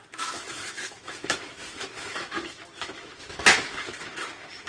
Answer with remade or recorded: remade